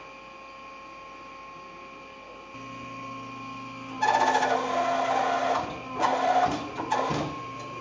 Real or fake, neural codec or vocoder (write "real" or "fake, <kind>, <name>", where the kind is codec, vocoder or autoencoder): real